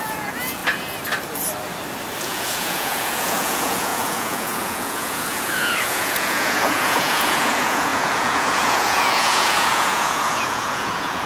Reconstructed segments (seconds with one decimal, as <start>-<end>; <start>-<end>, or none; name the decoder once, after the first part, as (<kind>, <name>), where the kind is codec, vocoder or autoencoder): 0.0-0.6 (vocoder, Vocos); 2.2-11.3